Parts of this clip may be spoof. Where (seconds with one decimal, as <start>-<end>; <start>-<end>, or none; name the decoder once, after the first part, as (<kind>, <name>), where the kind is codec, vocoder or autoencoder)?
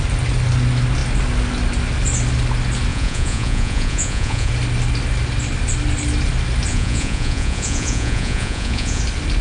2.9-4.5 (vocoder, Vocos); 6.7-9.0